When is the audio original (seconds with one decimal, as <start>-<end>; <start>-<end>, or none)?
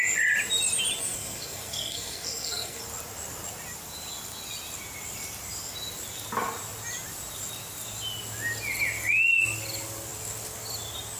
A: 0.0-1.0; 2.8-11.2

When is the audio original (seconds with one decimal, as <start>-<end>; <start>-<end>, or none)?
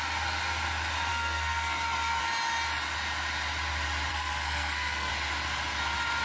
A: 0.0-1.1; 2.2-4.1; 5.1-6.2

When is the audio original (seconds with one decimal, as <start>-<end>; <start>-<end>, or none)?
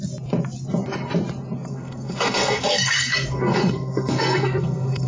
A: 0.0-1.7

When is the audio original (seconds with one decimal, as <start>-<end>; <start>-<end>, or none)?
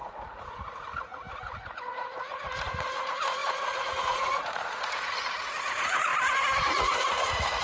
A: 6.1-6.6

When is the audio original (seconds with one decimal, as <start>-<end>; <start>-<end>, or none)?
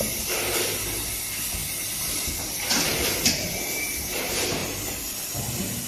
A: 0.0-1.6; 2.3-2.9; 4.0-4.6; 5.3-5.9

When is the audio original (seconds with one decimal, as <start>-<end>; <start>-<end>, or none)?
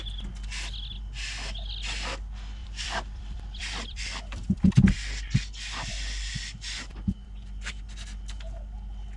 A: 0.0-2.6; 4.7-9.2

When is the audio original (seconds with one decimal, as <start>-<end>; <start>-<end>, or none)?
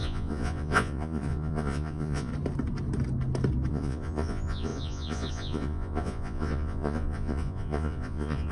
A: 2.3-3.7